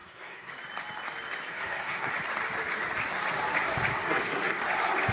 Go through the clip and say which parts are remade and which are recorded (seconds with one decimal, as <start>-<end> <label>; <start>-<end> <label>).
0.0-0.5 remade; 0.5-1.5 recorded; 1.5-2.1 remade; 2.1-3.9 recorded; 3.9-4.6 remade; 4.6-5.1 recorded